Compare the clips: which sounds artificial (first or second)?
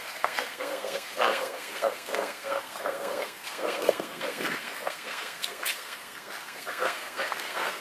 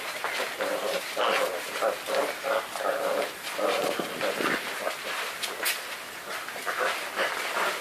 first